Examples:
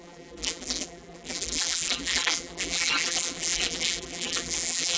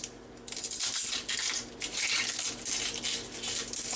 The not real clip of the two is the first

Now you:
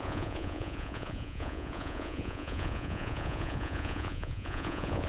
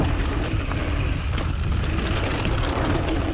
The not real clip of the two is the first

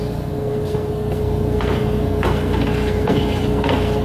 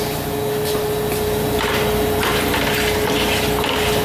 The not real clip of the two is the first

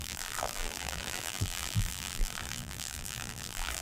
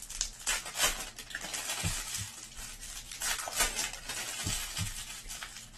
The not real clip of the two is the first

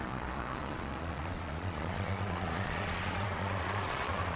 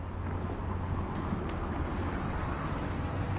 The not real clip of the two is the first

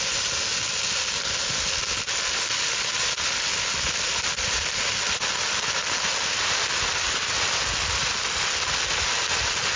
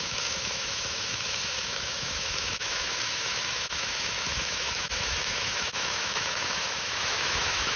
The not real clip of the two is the second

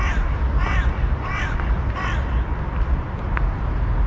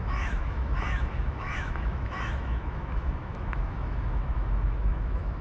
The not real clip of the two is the second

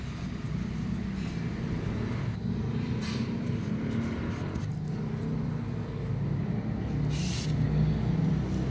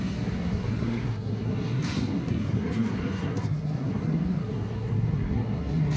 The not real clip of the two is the second